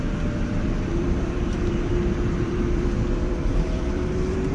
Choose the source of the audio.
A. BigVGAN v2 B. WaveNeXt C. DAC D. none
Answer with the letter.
A